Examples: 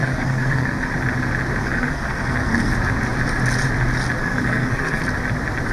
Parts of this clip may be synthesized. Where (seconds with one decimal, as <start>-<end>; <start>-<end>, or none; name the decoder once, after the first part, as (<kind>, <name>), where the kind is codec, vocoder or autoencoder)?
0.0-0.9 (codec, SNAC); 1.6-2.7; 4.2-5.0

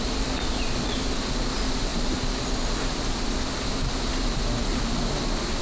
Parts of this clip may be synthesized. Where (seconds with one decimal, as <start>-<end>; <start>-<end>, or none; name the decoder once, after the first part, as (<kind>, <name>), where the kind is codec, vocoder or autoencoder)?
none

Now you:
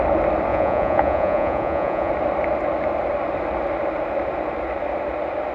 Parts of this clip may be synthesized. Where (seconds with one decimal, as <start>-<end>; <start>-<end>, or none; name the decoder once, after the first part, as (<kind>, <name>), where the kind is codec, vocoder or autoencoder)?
0.5-2.1 (vocoder, Vocos)